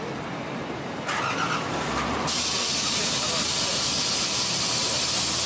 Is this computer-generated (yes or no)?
no